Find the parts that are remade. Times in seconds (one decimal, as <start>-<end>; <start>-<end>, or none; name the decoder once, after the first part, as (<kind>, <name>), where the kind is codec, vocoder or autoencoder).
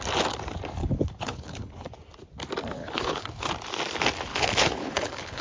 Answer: 0.8-1.9 (codec, HILCodec); 2.8-3.5; 4.3-5.4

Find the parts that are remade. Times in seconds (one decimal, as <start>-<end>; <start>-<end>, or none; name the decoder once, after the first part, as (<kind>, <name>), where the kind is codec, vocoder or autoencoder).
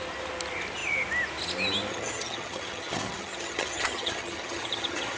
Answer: 1.9-5.2 (vocoder, HiFi-GAN)